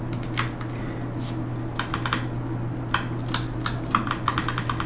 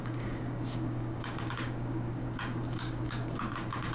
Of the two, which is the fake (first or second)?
second